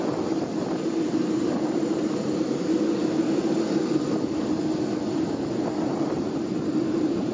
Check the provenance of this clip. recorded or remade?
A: recorded